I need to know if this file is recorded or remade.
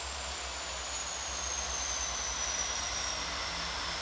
recorded